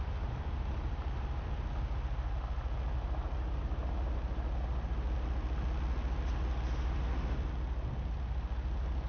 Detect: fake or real real